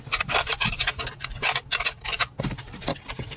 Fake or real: real